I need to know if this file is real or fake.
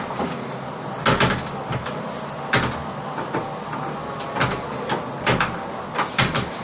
real